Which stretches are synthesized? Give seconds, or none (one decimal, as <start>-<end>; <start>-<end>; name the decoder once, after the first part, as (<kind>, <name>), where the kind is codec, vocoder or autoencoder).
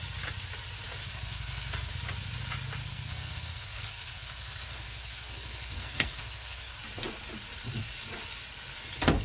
1.0-1.9 (codec, SNAC); 2.8-6.8